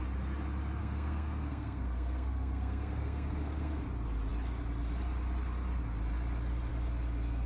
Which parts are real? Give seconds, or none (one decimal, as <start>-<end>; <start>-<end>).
0.0-0.8; 3.8-7.5